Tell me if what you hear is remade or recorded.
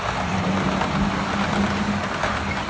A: recorded